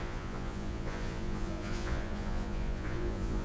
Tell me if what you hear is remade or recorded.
remade